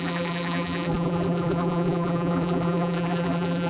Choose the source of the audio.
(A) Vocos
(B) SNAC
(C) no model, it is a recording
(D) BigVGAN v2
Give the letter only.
D